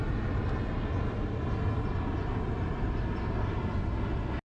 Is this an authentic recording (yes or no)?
yes